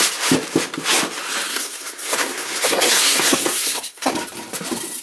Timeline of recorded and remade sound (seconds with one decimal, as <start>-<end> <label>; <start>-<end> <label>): 0.0-1.5 recorded; 1.5-4.1 remade; 4.1-5.0 recorded